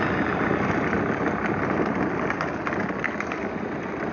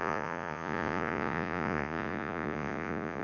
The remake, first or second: second